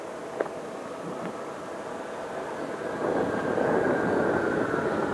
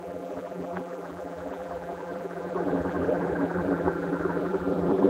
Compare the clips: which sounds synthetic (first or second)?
second